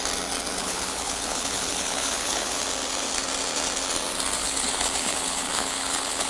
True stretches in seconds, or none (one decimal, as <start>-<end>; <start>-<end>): 0.0-0.6; 2.6-4.4